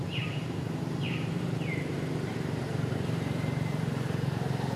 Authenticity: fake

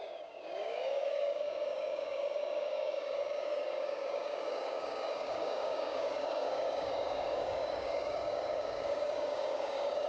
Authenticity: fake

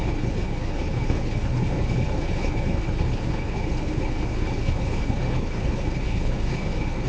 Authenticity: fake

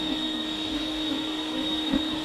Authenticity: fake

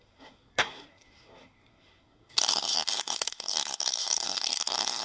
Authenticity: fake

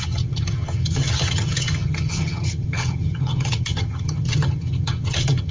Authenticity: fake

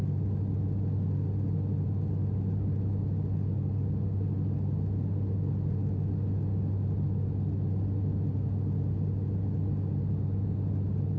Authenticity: real